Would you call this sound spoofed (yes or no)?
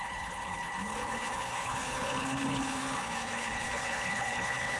yes